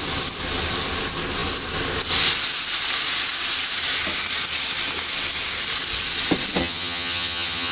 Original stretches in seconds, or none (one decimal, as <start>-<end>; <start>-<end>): 0.0-6.6